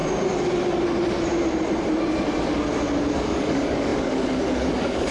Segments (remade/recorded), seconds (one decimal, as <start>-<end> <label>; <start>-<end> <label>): 0.0-3.1 recorded; 3.1-5.1 remade